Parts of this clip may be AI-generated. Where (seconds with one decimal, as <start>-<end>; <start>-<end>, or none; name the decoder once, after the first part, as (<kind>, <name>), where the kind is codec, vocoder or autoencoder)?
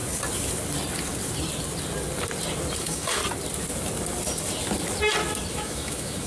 2.8-3.2 (autoencoder, DAC-VAE); 5.5-6.3